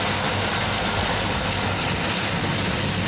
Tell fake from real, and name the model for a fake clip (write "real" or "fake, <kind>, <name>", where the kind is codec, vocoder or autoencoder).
real